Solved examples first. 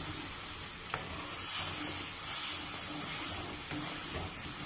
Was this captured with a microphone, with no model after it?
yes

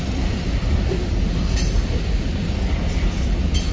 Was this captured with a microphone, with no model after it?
yes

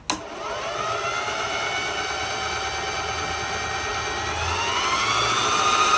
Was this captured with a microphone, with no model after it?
yes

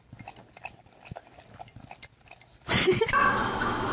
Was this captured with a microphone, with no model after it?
yes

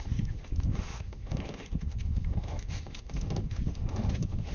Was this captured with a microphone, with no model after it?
no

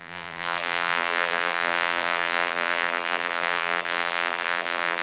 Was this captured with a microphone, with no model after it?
no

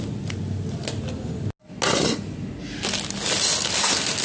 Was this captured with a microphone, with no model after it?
yes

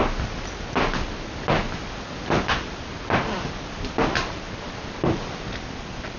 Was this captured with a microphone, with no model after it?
yes